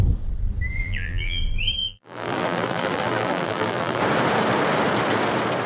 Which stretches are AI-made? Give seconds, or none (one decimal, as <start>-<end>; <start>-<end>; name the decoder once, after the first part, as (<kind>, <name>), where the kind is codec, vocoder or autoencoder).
0.8-1.4 (vocoder, BigVGAN v2); 1.8-4.0